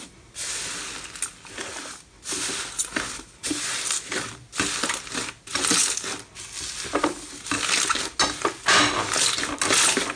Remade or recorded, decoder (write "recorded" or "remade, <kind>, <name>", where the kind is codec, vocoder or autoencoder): recorded